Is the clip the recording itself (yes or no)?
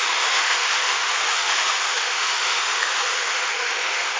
no